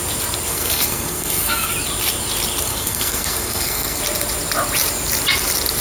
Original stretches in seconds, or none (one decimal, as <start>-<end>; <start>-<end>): 0.0-0.5; 1.7-2.7; 4.0-5.8